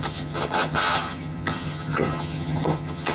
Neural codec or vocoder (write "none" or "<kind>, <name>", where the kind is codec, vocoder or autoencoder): vocoder, HiFi-GAN